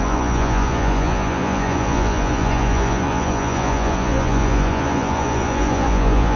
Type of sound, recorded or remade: remade